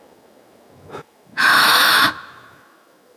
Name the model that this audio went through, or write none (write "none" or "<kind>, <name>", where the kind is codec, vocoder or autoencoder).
autoencoder, DAC-VAE